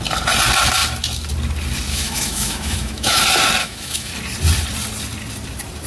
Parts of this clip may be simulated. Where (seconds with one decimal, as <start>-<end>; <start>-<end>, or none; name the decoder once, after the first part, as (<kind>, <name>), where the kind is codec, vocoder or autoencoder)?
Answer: 1.9-3.2 (autoencoder, DAC-VAE); 3.6-4.1